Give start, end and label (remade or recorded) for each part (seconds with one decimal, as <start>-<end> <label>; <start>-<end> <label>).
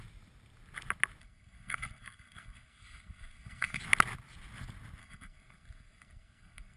0.0-1.2 recorded; 1.2-3.8 remade; 3.8-5.0 recorded; 5.0-6.8 remade